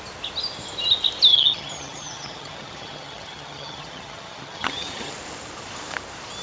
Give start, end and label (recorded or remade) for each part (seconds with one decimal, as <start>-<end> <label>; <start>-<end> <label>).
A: 0.0-1.3 recorded; 1.3-5.1 remade; 5.1-6.4 recorded